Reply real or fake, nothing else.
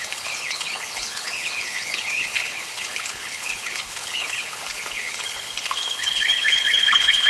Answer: fake